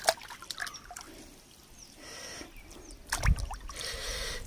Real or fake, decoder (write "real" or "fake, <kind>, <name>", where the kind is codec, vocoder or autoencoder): real